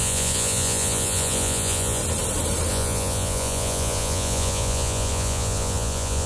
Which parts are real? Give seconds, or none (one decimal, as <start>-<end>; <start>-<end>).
2.0-2.7